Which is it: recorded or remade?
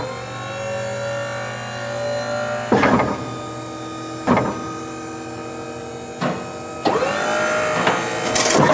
recorded